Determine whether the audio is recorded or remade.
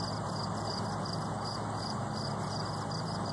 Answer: recorded